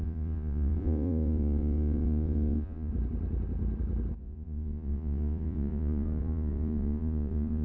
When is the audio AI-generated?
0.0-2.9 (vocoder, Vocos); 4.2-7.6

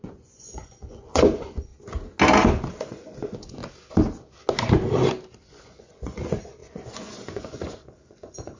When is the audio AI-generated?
0.0-1.7 (vocoder, Vocos); 2.8-3.6; 5.5-8.6